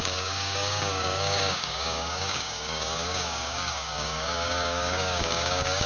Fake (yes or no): yes